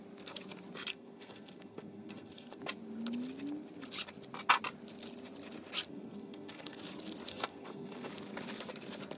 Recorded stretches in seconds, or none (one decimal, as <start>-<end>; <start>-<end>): 0.0-0.9; 2.6-5.9; 6.8-7.3; 8.1-9.2